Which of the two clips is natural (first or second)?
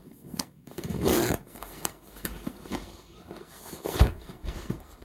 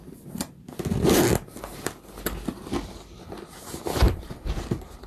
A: second